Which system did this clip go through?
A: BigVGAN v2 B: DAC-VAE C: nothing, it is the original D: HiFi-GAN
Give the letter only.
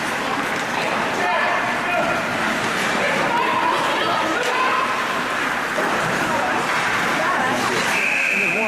A